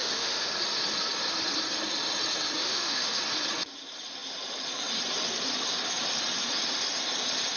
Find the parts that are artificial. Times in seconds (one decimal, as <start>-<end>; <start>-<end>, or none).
0.0-0.5; 2.6-3.2